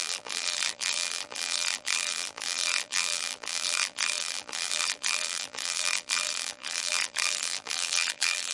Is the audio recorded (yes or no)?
no